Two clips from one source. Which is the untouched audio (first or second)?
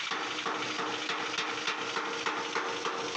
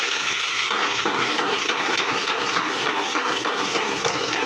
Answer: first